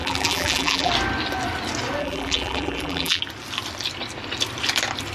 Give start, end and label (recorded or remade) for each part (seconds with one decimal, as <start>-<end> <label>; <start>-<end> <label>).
0.0-0.9 remade; 0.9-2.0 recorded; 2.0-3.2 remade; 3.2-5.1 recorded